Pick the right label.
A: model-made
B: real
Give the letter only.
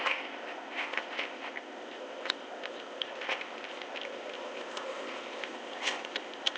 A